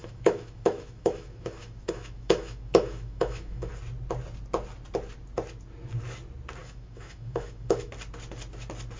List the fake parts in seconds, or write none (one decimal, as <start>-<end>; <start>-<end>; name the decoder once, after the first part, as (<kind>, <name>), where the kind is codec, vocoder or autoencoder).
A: 0.0-3.7 (autoencoder, DAC-VAE); 6.6-7.9